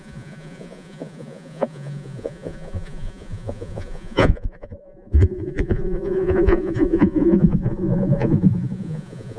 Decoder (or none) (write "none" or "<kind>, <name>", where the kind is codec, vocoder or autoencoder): vocoder, Vocos